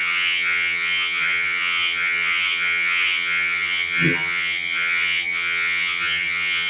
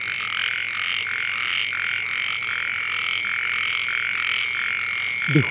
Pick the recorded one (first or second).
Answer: second